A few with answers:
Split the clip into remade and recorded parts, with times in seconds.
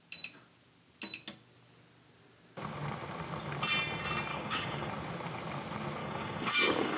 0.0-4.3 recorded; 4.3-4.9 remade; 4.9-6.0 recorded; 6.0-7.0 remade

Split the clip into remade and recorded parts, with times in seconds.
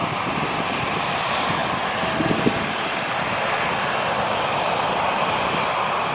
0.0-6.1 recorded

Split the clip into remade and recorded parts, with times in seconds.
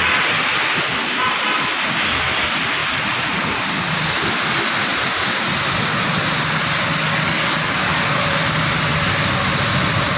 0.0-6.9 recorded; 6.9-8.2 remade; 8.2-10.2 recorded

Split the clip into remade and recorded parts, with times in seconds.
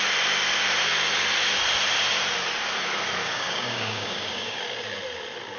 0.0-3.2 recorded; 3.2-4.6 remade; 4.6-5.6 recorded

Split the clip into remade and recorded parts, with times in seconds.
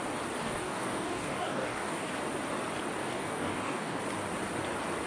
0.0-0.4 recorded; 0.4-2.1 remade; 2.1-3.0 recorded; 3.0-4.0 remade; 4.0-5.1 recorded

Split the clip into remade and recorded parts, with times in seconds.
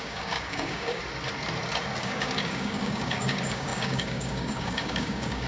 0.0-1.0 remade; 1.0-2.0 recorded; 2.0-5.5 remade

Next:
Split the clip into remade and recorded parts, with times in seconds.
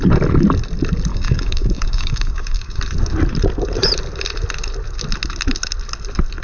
0.0-1.1 recorded; 1.1-2.8 remade; 2.8-6.4 recorded